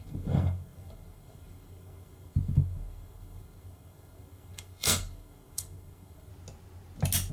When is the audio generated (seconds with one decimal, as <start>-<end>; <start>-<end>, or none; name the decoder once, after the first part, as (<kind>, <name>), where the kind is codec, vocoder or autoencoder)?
0.0-6.3 (codec, SNAC)